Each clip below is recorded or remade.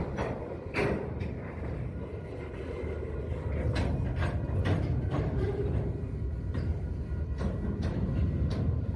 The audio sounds recorded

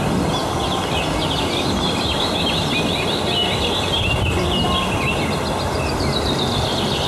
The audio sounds recorded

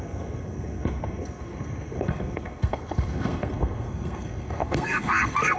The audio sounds remade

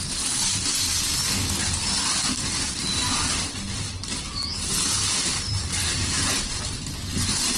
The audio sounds recorded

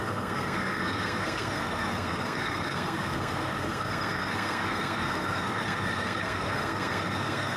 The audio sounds remade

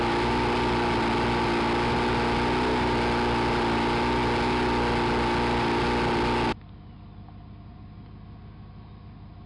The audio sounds recorded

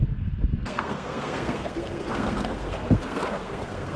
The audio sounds remade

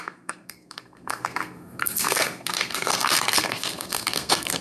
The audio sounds remade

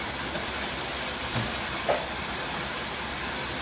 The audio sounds recorded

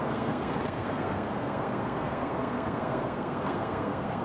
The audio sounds remade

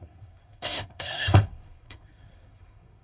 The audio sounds remade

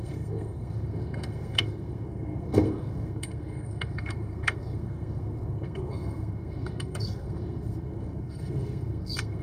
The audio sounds remade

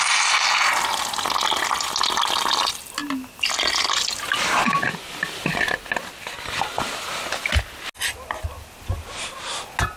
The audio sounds recorded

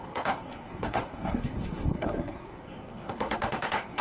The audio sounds remade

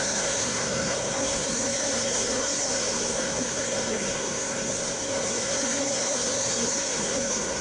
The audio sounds remade